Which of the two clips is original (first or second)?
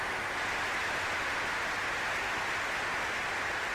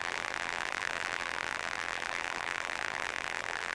first